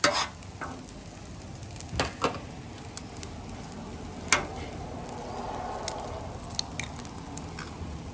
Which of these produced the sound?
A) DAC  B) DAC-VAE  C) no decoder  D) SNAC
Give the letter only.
C